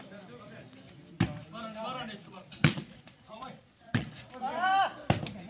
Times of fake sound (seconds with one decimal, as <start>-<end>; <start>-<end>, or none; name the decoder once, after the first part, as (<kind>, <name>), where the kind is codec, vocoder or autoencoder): 2.2-4.3 (vocoder, Vocos)